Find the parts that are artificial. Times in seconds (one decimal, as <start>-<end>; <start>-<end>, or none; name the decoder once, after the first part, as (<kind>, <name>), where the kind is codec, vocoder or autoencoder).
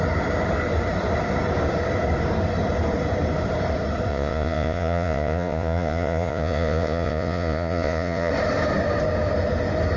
4.1-8.3 (vocoder, Vocos)